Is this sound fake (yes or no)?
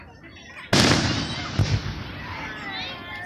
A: no